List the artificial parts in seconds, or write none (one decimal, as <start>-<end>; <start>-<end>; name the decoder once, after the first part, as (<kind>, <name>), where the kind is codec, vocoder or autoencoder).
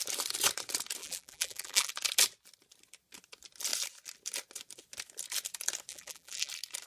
1.0-1.9 (vocoder, BigVGAN v2); 5.9-6.5